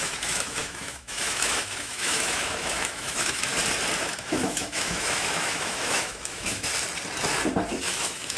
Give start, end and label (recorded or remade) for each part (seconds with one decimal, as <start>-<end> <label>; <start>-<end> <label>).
0.0-3.5 remade; 3.5-4.0 recorded; 4.0-6.7 remade; 6.7-7.8 recorded; 7.8-8.4 remade